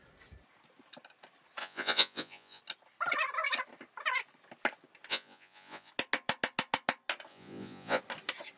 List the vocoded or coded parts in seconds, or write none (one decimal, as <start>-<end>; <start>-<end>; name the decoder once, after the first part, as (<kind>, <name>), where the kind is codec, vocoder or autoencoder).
1.6-2.6 (vocoder, Vocos); 5.1-5.9; 7.3-8.0